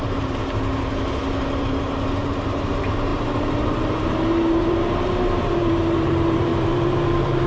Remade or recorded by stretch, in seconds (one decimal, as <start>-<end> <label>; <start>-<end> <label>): 0.0-0.4 remade; 0.4-1.6 recorded; 1.6-7.5 remade